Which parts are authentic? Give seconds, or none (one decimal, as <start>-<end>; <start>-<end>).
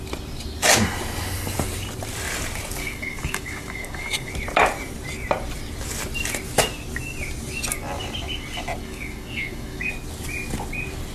0.0-2.8; 4.3-8.8; 9.9-11.1